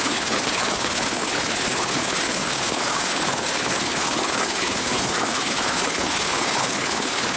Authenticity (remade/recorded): remade